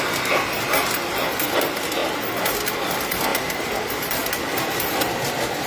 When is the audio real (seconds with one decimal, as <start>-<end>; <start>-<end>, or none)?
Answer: 0.0-5.7